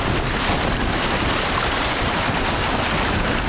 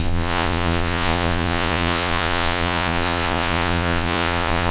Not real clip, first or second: second